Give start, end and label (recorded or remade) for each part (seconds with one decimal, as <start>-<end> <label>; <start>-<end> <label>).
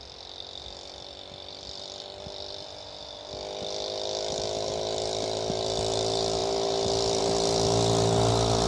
0.0-8.7 recorded